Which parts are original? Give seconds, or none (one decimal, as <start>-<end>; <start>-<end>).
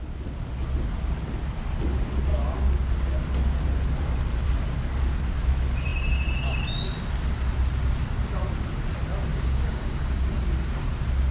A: 0.0-9.3; 10.2-11.3